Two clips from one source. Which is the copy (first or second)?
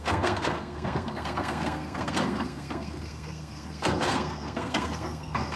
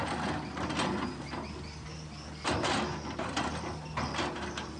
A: first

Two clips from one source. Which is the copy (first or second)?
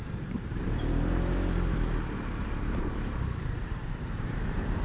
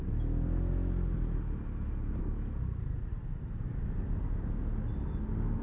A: first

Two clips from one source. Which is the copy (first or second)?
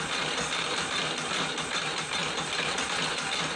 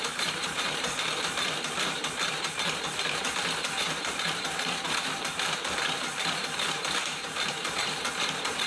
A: second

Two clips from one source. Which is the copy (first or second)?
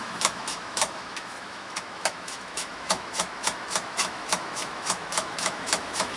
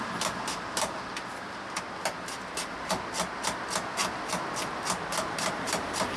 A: first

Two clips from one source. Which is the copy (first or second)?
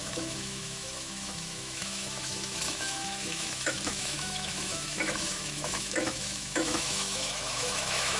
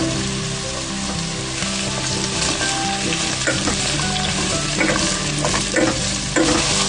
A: first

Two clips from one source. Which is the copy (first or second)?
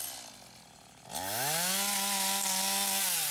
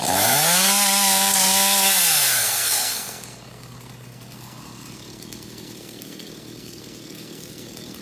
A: second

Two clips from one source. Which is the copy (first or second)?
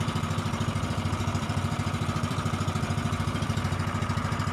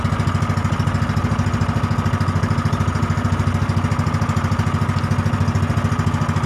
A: first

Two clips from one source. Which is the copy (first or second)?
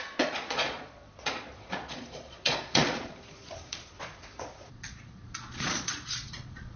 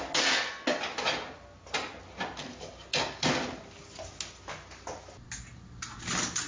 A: first